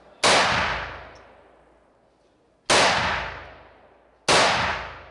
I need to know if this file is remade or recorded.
recorded